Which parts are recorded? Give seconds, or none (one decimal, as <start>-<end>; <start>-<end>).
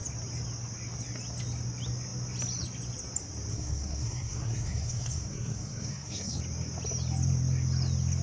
0.0-3.5; 6.4-8.2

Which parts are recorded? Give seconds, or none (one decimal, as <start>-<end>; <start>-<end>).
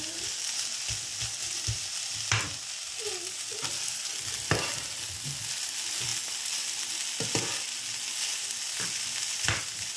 0.0-10.0